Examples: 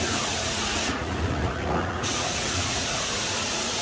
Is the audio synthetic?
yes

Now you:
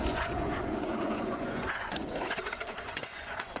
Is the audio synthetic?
yes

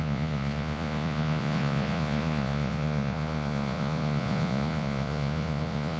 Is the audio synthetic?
yes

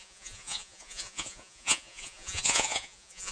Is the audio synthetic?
yes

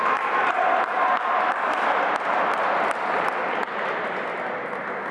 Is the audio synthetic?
no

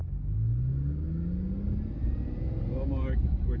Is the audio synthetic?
no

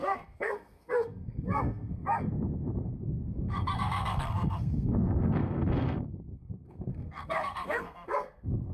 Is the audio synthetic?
yes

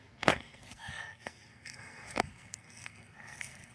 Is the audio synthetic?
yes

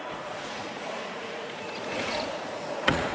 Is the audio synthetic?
yes